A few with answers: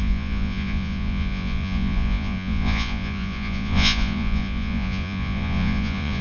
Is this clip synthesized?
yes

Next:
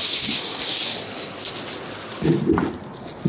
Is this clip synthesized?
no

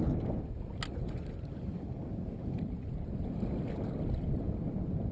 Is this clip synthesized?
no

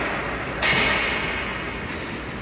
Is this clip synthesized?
no